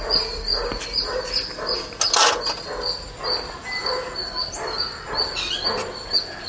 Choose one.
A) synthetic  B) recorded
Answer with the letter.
B